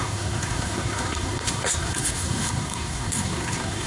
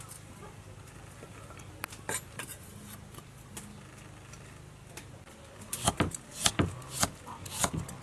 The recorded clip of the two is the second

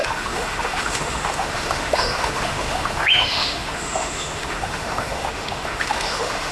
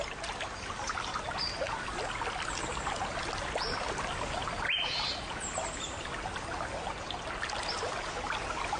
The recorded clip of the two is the second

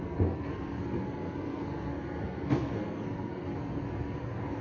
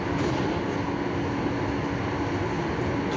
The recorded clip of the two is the second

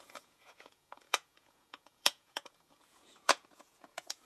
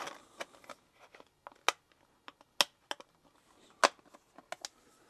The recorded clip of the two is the second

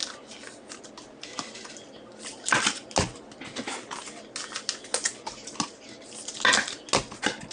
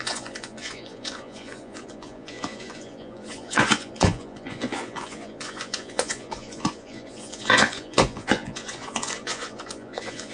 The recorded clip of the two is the first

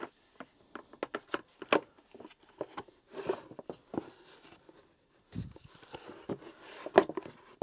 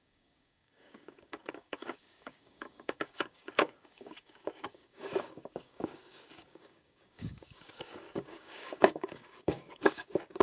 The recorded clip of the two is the first